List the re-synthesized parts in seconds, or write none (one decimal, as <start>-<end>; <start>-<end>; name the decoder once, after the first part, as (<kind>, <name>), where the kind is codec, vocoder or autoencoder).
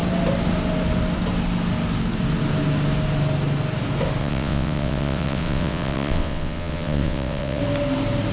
4.2-7.6 (vocoder, WaveNeXt)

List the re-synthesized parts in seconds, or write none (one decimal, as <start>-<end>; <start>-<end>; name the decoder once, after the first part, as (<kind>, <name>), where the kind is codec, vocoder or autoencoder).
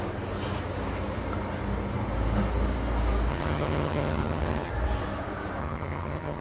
3.3-4.7 (vocoder, HiFi-GAN); 5.6-6.4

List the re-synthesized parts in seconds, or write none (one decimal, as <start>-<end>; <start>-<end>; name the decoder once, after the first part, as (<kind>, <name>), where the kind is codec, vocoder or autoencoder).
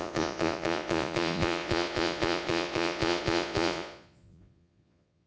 0.0-5.3 (vocoder, Vocos)